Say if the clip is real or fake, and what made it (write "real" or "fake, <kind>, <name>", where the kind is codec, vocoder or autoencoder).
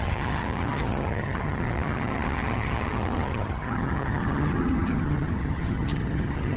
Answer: fake, vocoder, HiFi-GAN